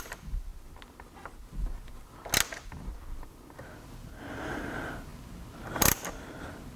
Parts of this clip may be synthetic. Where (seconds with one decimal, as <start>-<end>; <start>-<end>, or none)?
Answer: 0.0-0.5; 2.9-6.8